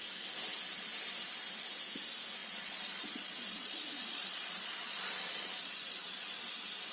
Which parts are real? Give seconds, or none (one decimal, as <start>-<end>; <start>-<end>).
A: 0.0-2.4; 6.5-6.9